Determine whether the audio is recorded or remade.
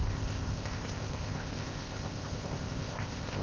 remade